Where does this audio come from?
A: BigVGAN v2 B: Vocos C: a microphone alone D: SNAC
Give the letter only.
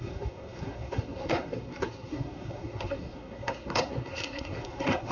D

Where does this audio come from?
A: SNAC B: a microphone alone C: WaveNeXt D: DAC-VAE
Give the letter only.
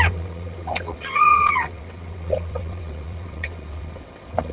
C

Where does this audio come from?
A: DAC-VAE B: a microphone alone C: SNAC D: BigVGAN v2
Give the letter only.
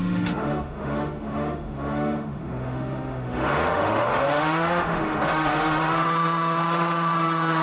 A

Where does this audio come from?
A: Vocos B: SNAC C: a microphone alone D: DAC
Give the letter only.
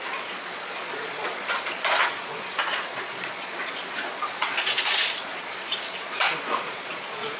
A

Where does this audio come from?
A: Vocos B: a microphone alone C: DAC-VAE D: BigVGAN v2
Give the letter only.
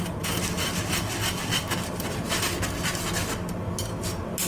B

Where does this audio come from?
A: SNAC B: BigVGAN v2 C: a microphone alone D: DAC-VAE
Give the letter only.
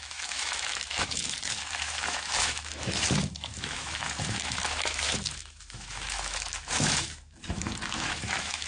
D